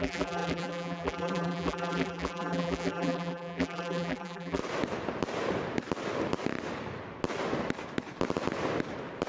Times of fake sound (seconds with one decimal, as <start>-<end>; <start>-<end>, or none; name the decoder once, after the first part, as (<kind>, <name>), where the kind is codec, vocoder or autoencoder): 0.0-4.6 (vocoder, BigVGAN v2)